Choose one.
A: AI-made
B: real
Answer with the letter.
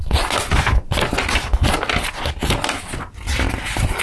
B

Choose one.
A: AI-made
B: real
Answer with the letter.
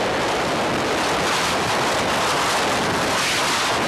B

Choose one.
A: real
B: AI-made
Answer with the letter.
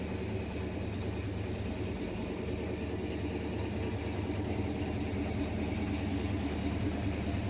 A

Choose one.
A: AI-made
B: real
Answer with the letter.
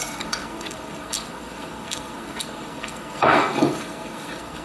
A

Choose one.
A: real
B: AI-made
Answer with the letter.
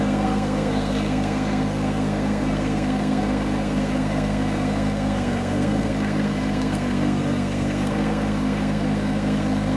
B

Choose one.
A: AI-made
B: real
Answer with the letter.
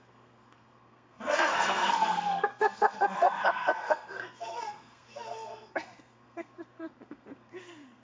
A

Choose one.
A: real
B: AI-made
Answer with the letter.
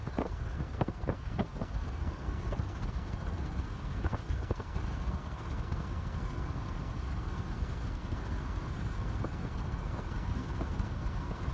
B